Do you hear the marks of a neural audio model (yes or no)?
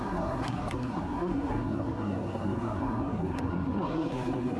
yes